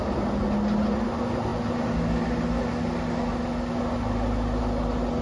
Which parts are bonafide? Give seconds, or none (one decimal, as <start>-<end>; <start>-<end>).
0.0-5.2